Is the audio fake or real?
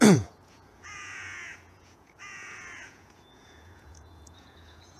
fake